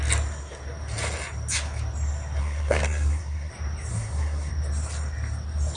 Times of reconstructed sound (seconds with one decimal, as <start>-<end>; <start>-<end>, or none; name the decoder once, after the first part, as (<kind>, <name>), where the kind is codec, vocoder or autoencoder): 2.4-3.5 (codec, SNAC); 3.9-4.5